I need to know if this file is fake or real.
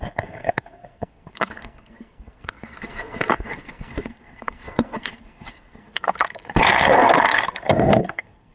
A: fake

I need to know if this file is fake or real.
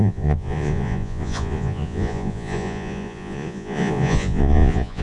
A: fake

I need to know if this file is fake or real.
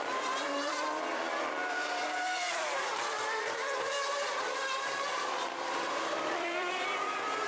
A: fake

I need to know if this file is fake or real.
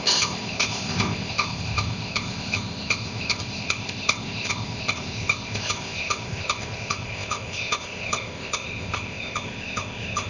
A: fake